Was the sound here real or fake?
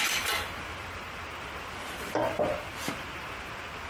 fake